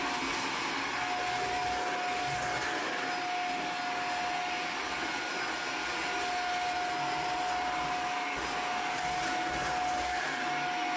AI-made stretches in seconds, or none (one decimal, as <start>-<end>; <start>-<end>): none